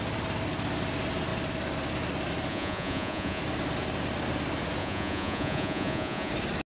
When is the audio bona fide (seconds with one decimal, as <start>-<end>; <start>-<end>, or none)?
0.0-2.5; 3.4-4.8; 6.3-6.7